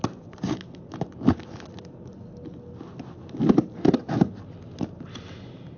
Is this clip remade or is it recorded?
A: recorded